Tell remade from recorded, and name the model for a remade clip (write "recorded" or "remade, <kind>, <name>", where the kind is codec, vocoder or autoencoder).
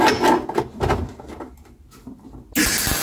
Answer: recorded